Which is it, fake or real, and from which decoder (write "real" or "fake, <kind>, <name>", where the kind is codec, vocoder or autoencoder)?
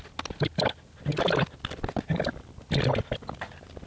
real